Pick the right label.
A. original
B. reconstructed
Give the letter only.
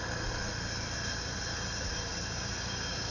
A